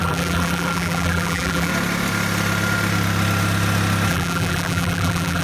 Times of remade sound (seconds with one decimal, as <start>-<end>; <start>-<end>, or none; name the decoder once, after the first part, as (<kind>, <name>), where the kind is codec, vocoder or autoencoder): 0.0-1.7 (vocoder, BigVGAN v2); 4.1-5.4